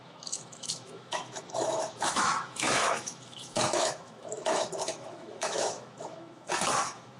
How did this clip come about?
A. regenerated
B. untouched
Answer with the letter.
A